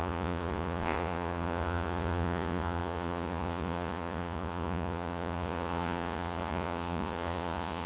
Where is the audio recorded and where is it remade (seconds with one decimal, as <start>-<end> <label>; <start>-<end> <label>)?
0.0-7.9 remade